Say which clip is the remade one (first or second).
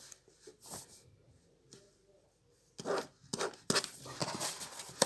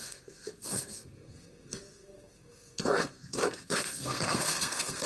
second